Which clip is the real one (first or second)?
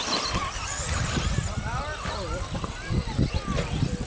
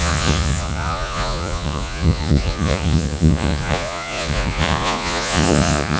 first